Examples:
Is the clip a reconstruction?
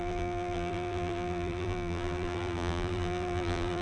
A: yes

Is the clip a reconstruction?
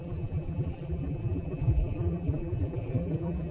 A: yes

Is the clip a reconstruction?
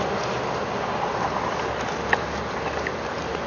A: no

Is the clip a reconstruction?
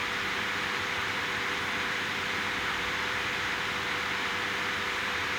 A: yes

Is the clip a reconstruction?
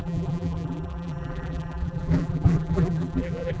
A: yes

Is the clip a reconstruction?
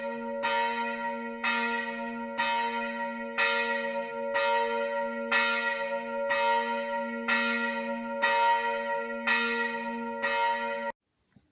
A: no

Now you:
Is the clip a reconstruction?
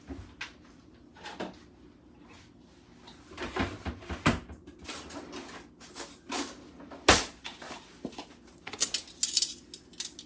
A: no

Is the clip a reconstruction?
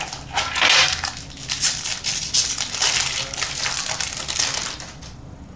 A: no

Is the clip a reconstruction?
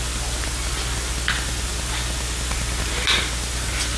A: no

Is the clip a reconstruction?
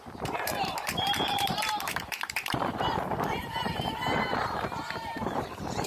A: yes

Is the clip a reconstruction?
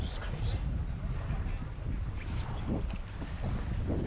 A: no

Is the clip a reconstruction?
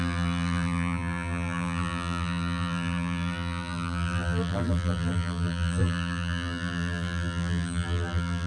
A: yes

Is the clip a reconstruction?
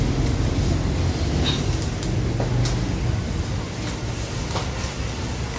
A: no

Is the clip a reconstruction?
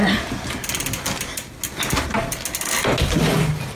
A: no